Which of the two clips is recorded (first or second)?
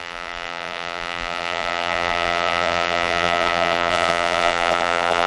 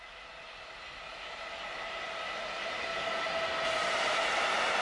second